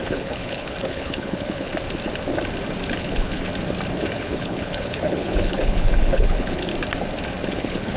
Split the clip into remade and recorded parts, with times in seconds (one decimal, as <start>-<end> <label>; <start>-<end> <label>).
0.0-1.7 remade; 1.7-3.0 recorded; 3.0-3.5 remade; 3.5-4.2 recorded; 4.2-6.7 remade; 6.7-7.6 recorded; 7.6-8.0 remade